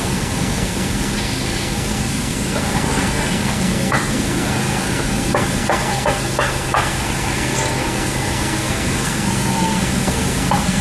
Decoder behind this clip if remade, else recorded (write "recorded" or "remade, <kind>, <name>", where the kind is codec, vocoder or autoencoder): remade, codec, SNAC